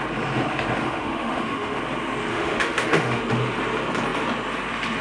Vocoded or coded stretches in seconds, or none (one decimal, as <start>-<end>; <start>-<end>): 0.8-1.8; 2.3-3.2